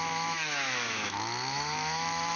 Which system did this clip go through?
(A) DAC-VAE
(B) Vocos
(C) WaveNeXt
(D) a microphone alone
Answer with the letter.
A